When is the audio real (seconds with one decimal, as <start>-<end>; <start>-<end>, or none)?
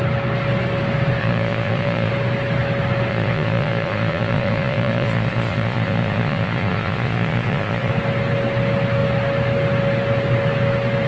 0.0-1.2; 2.1-3.1; 7.9-11.1